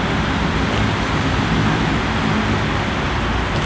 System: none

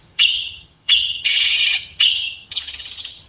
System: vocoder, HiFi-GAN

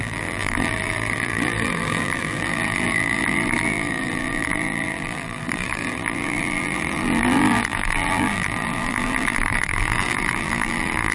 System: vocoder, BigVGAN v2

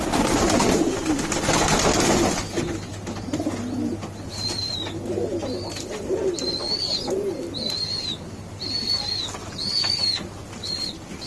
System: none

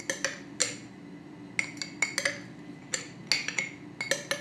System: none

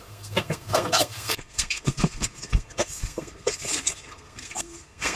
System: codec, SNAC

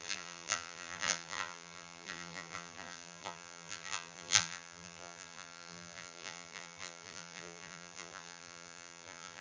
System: vocoder, BigVGAN v2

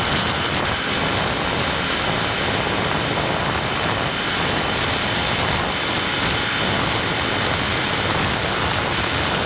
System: none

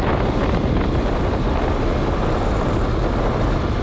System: none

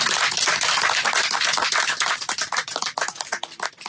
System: none